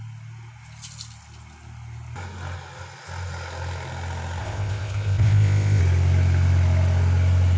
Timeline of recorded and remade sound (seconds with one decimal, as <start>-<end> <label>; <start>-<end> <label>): 0.0-4.4 recorded; 4.4-5.8 remade; 5.8-7.6 recorded